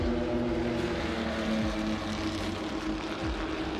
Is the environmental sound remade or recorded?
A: recorded